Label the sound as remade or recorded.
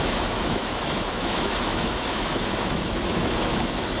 remade